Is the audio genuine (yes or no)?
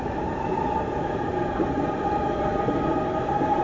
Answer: no